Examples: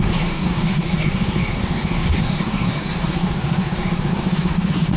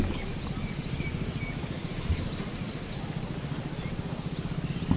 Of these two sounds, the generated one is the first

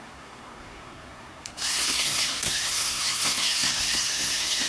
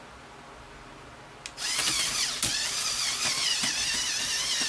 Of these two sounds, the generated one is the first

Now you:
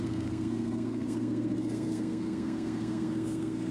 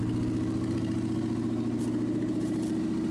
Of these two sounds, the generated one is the first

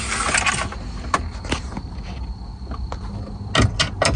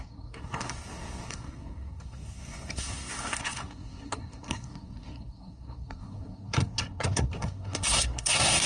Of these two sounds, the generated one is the second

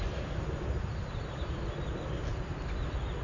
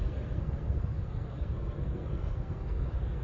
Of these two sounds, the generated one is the second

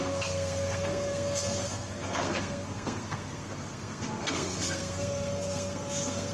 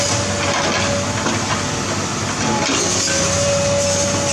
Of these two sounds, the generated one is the first